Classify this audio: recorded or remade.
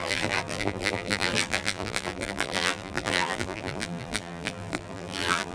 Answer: remade